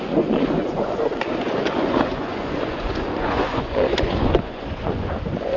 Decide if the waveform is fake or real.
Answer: fake